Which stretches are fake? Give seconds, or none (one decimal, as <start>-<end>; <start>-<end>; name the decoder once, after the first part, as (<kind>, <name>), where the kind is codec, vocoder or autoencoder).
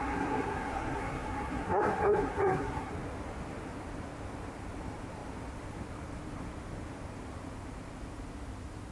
0.0-2.9 (codec, SNAC)